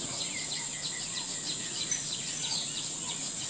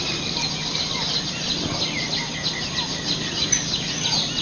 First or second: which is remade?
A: first